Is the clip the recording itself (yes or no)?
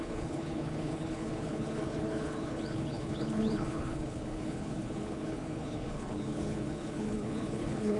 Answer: no